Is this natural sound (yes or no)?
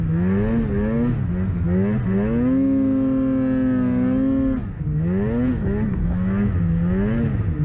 yes